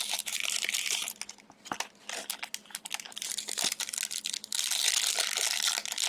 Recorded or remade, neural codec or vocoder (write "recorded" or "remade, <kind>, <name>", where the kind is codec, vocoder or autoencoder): recorded